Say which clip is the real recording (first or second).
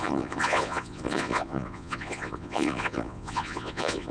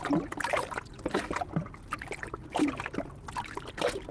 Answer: second